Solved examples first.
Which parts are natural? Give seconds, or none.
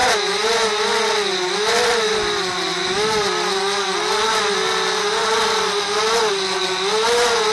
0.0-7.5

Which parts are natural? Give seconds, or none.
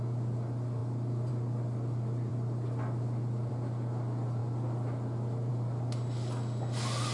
0.0-7.1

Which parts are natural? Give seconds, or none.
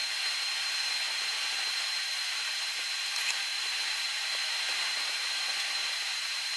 none